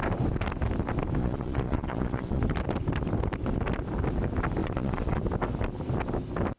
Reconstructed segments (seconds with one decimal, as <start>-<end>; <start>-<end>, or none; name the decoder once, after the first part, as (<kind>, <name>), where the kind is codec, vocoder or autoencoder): 1.2-2.4 (vocoder, Vocos); 4.6-5.2